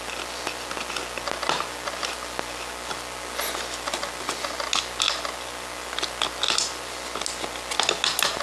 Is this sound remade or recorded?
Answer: recorded